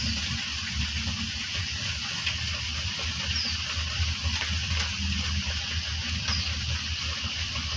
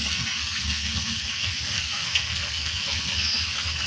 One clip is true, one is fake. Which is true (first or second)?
first